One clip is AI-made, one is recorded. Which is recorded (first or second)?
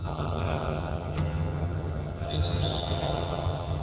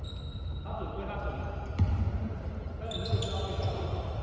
second